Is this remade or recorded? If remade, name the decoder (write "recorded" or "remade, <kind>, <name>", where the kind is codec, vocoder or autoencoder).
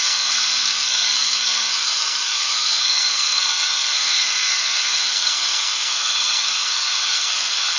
remade, codec, SNAC